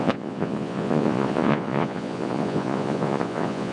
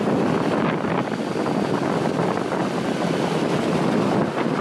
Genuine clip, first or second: second